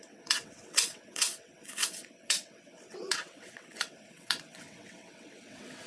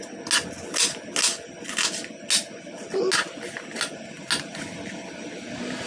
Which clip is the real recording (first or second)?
second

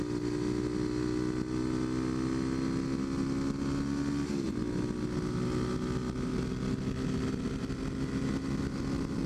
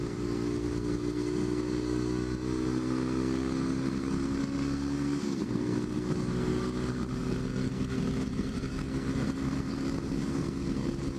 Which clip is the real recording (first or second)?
first